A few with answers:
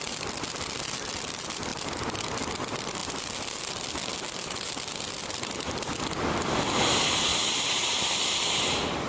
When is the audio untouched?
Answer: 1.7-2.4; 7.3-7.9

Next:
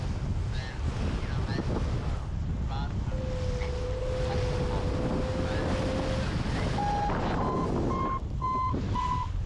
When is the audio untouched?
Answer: 0.0-9.5

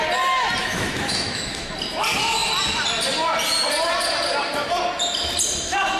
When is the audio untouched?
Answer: 0.0-0.6; 1.7-6.0

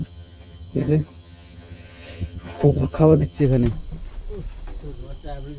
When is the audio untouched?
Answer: 3.4-5.6

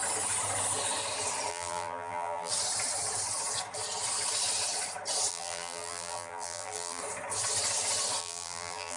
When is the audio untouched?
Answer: 0.0-1.5; 2.5-5.3; 7.0-8.2

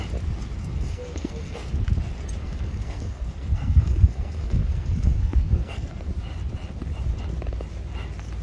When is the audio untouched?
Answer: 0.0-0.6; 1.7-2.4; 6.1-8.4

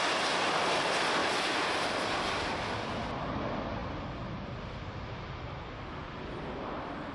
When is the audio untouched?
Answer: 0.0-1.2; 2.5-7.1